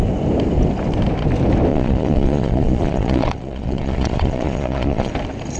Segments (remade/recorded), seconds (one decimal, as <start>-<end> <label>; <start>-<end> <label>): 0.0-1.7 recorded; 1.7-5.1 remade; 5.1-5.6 recorded